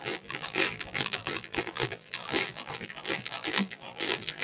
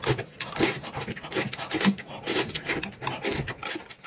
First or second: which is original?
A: second